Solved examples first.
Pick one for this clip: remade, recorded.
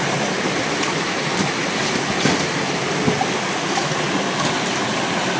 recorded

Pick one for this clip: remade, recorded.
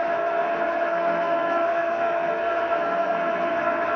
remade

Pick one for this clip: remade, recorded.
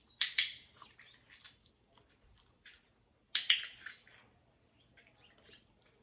recorded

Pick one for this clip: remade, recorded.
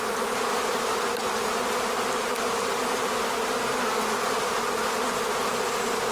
recorded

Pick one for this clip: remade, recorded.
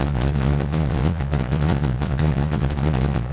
remade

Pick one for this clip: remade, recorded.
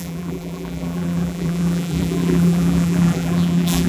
remade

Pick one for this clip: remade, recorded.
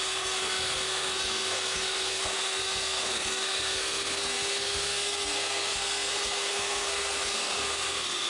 remade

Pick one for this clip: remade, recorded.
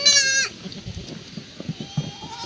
recorded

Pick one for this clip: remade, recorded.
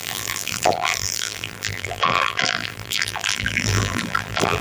remade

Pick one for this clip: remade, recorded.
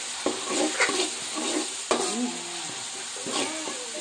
recorded